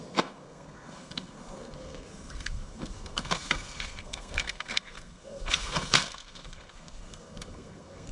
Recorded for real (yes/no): no